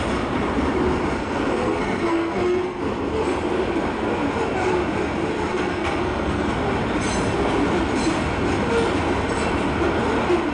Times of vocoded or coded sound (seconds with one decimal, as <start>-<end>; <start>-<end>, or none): 1.2-2.8; 5.5-6.5